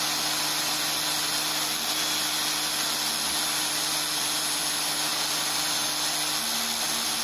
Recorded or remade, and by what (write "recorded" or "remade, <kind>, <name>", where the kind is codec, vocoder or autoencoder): recorded